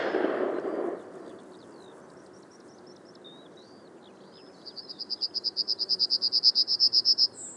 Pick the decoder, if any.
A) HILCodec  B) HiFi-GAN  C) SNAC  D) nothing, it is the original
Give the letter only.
D